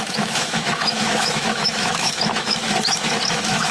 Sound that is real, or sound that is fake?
fake